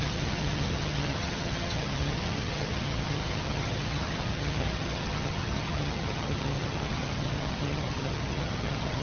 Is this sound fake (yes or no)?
yes